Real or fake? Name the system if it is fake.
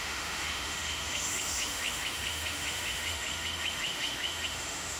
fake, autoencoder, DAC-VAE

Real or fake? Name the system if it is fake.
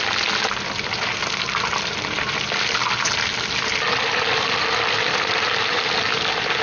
real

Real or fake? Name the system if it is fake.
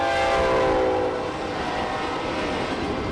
real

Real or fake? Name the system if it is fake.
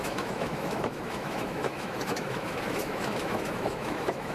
fake, autoencoder, DAC-VAE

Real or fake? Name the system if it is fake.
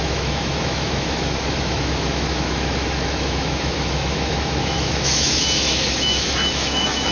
fake, autoencoder, DAC-VAE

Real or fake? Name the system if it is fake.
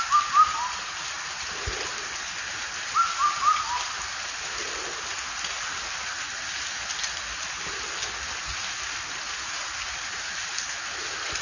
real